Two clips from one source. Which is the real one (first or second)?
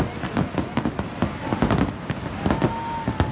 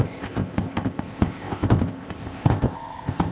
first